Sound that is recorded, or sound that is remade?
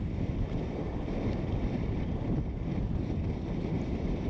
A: remade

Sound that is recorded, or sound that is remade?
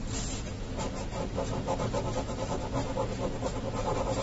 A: recorded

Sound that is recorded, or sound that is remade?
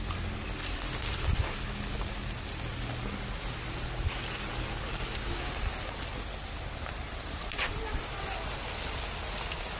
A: recorded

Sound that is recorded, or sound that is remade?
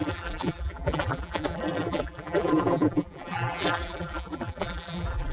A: remade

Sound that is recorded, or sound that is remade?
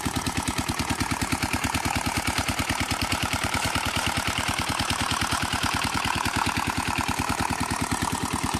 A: remade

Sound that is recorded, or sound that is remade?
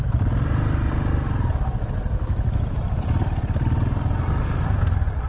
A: remade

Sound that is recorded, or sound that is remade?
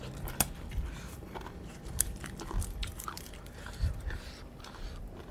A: remade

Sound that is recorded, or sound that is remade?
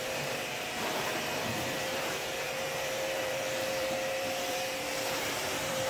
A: remade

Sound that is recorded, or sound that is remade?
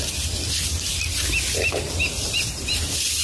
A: recorded